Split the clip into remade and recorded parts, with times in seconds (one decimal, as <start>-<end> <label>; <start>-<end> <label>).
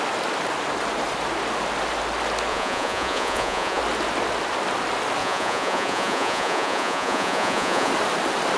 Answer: 0.0-2.5 recorded; 2.5-3.8 remade; 3.8-5.2 recorded; 5.2-7.9 remade; 7.9-8.6 recorded